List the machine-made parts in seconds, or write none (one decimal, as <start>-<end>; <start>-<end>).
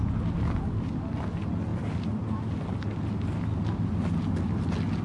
none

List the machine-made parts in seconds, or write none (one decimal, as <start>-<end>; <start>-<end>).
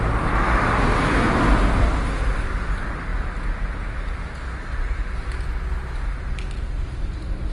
none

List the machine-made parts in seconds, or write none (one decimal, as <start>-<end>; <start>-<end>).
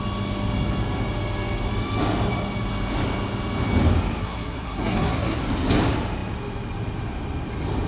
4.2-5.4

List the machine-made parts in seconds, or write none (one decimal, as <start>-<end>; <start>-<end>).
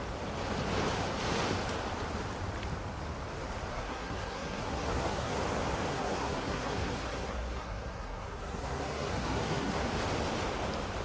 3.7-5.4; 5.9-9.9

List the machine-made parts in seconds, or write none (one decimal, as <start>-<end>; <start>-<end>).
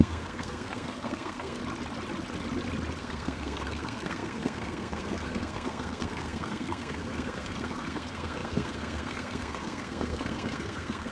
0.0-1.6; 3.0-11.1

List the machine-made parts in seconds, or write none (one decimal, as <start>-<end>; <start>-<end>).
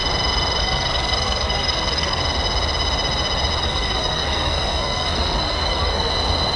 0.6-2.2; 3.6-6.1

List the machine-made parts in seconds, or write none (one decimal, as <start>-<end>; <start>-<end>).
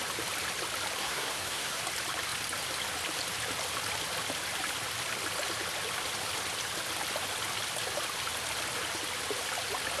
1.0-1.8